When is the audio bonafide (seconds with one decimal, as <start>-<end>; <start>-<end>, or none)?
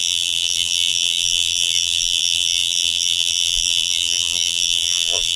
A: none